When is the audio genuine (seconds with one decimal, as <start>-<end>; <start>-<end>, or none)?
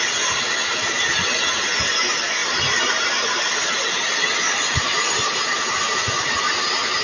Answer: 0.0-2.4; 5.5-7.0